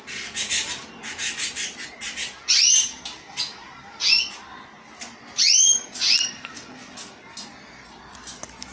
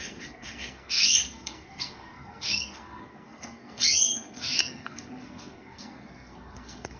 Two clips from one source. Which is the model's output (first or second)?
second